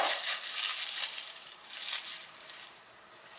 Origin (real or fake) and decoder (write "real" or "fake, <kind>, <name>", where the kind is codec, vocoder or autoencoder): real